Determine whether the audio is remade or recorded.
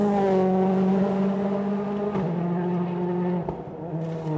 recorded